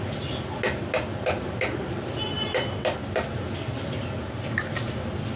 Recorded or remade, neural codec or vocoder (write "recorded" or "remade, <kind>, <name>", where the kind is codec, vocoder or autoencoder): recorded